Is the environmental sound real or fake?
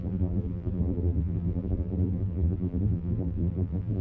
fake